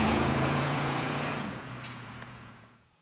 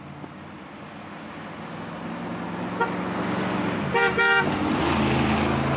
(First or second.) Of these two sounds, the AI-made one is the first